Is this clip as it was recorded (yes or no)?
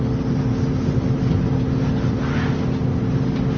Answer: yes